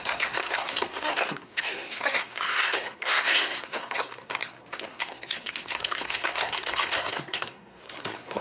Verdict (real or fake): fake